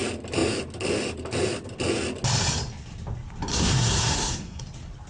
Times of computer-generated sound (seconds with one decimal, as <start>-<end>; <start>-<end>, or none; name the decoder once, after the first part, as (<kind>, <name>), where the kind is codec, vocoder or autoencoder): 3.5-4.6 (codec, SNAC)